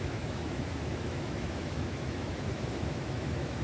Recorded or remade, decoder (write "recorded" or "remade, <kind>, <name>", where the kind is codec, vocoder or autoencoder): remade, autoencoder, DAC-VAE